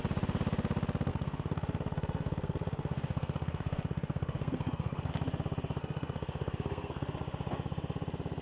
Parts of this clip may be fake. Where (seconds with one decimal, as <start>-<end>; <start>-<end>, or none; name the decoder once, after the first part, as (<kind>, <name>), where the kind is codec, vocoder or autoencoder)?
1.1-5.1 (codec, SNAC); 5.8-7.1